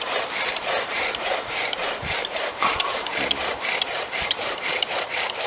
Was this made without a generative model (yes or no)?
no